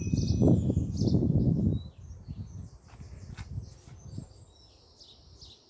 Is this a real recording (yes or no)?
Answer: yes